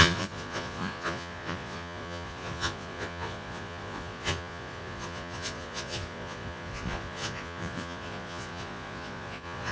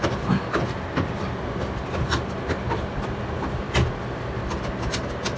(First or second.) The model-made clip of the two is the first